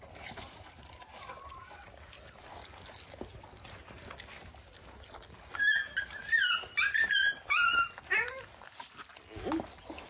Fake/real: real